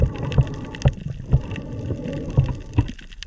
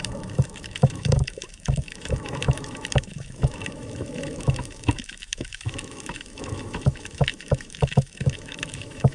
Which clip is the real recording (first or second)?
first